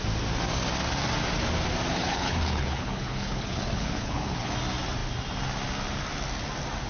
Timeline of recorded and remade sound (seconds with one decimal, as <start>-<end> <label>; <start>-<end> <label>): 0.0-1.9 recorded; 1.9-4.5 remade; 4.5-6.9 recorded